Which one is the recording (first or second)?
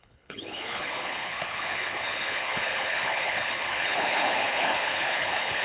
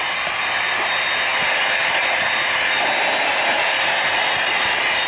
second